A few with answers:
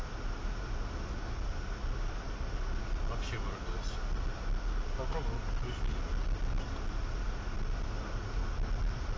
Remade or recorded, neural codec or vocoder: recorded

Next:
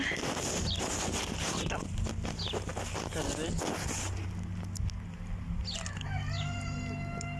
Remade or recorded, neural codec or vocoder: recorded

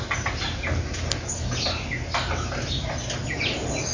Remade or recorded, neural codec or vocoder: recorded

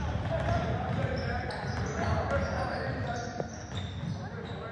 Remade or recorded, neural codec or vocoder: recorded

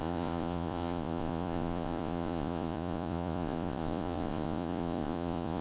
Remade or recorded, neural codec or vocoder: remade, vocoder, Vocos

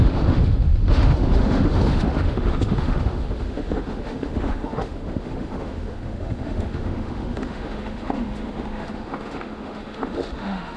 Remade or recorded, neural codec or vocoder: remade, autoencoder, DAC-VAE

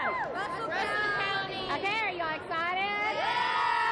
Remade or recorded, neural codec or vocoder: recorded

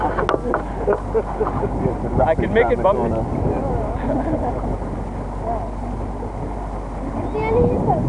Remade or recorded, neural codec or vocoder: recorded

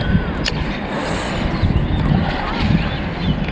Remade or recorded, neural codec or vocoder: recorded